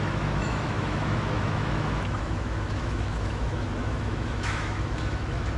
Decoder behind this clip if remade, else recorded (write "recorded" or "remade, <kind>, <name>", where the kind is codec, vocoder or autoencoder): remade, autoencoder, DAC-VAE